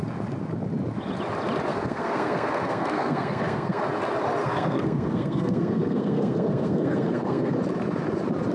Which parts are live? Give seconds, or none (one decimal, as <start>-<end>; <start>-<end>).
0.0-1.7; 3.8-4.4; 7.5-8.5